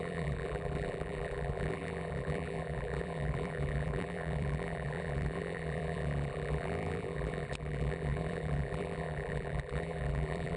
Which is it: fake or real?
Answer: fake